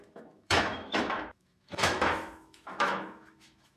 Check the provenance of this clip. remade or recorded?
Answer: remade